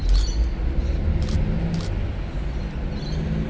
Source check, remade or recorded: recorded